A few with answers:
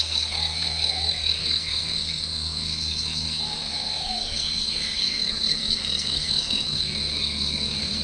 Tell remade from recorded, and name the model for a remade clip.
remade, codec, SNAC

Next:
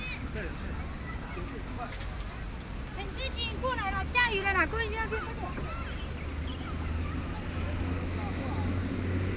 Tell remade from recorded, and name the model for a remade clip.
recorded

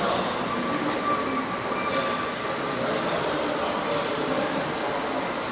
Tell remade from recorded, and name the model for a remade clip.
recorded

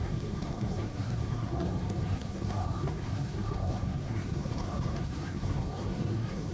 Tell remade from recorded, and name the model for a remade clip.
remade, codec, SNAC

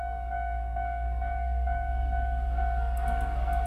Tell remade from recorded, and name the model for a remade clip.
remade, codec, SNAC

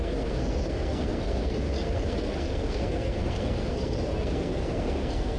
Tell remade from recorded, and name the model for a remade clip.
remade, codec, SNAC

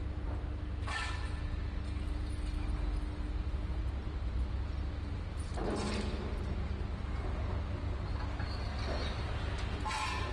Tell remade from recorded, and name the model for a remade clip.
recorded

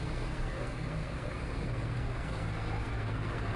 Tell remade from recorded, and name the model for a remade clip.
remade, codec, SNAC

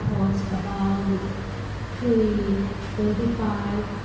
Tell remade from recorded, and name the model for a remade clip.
recorded